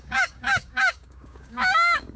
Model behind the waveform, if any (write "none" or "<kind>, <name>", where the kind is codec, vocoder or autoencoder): codec, DAC